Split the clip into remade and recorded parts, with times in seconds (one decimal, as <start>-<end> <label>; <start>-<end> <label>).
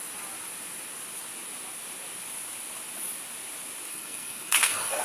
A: 0.0-3.9 recorded; 3.9-5.0 remade